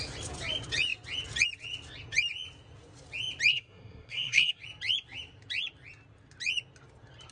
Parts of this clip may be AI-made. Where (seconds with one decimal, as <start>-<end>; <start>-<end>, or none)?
3.5-4.6